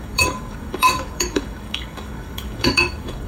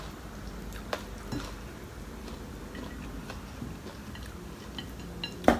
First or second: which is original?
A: second